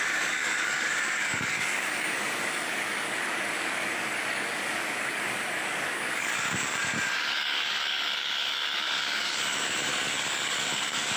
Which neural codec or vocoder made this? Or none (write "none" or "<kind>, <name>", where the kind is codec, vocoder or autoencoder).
codec, DAC